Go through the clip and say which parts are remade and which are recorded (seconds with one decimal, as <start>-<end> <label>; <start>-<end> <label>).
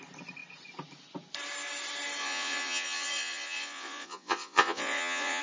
0.0-2.2 recorded; 2.2-5.4 remade